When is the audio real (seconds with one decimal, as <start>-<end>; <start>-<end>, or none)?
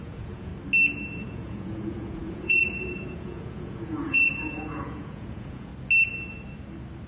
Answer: 0.5-1.2; 5.7-7.1